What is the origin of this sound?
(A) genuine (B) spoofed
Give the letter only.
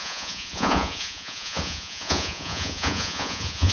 B